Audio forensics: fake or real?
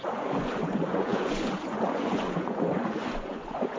fake